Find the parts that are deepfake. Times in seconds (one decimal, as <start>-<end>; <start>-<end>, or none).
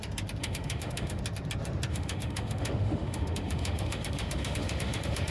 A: 0.4-1.2; 1.9-5.3